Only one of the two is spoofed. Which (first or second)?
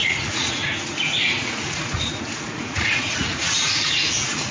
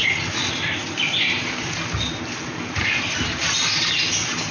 first